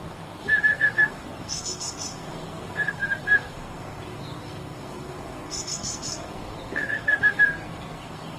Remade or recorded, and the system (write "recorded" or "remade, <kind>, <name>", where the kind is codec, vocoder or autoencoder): remade, codec, SNAC